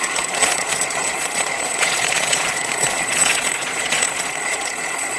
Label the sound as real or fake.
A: fake